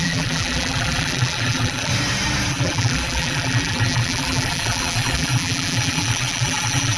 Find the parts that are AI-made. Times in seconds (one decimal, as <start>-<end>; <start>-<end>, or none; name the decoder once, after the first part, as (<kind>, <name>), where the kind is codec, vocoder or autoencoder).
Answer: 0.0-1.9 (vocoder, BigVGAN v2); 2.5-7.0